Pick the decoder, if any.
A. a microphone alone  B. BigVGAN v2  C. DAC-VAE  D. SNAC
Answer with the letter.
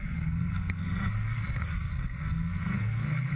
D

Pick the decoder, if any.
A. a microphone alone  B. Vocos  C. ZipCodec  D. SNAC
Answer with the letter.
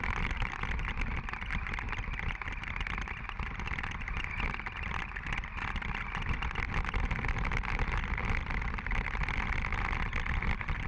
A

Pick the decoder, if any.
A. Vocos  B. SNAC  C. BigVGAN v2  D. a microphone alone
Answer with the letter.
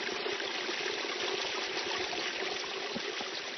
D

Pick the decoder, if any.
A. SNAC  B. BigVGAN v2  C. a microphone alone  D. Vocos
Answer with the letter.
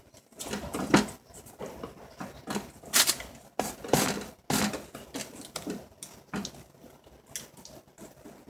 C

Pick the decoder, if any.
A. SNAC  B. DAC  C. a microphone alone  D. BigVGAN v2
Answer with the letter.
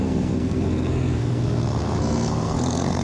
A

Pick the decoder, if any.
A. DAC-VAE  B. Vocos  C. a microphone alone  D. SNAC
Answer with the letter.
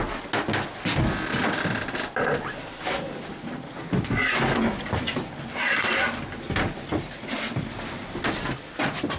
C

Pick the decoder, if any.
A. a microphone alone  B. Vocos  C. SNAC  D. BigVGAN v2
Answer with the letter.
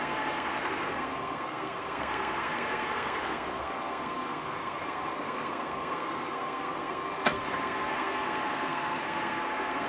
C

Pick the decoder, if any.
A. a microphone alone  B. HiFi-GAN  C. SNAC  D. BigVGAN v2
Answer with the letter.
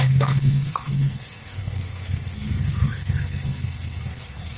C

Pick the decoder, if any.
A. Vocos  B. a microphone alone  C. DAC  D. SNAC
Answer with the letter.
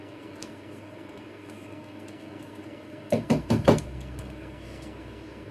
D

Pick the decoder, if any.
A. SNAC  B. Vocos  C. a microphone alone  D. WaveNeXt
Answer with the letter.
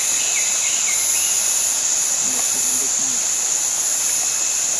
C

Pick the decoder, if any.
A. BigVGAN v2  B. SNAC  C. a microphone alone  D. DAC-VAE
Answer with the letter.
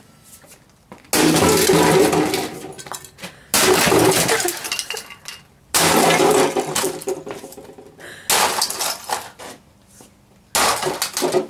C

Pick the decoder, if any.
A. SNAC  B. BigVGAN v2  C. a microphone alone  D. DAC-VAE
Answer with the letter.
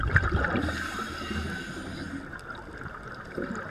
C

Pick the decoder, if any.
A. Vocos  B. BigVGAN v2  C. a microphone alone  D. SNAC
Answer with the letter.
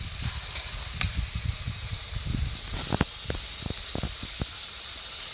C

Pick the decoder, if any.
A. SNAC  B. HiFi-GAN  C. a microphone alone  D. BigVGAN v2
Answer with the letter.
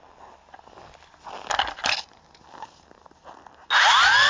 C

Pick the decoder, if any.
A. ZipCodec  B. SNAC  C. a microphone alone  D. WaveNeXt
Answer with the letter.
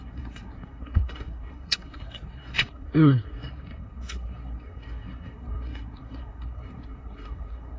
B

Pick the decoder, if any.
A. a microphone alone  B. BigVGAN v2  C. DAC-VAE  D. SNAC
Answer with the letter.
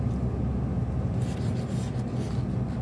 A